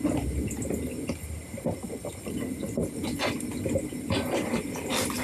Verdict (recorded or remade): recorded